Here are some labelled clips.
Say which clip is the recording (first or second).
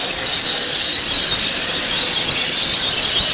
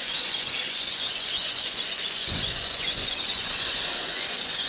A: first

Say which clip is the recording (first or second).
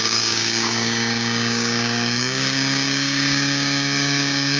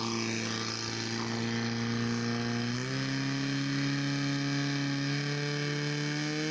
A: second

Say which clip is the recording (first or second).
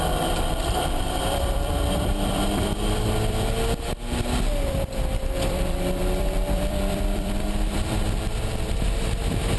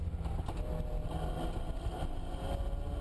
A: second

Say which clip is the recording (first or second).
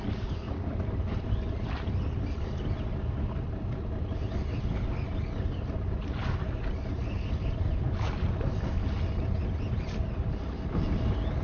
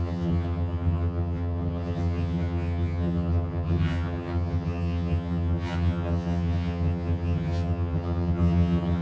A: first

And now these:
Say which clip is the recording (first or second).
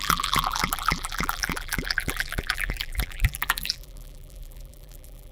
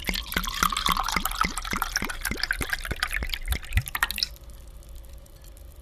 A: second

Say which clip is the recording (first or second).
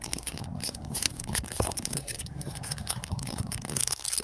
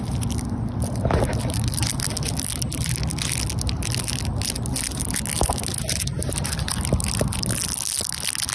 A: second